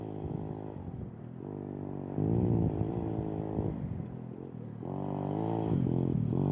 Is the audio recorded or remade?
recorded